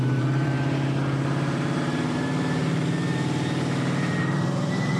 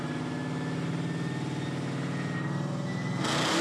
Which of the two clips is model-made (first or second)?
first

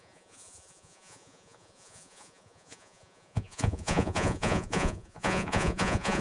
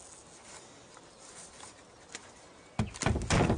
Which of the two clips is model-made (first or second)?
first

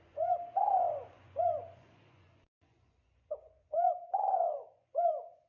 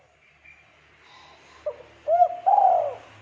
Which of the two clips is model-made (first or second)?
first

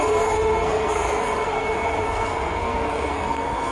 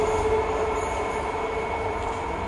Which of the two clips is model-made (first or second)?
first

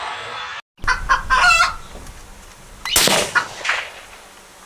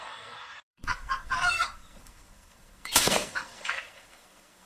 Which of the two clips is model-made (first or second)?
second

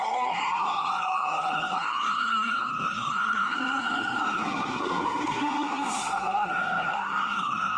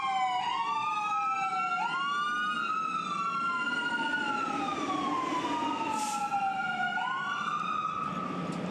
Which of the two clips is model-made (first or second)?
first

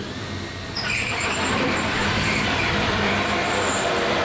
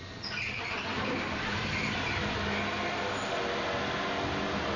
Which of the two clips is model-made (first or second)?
first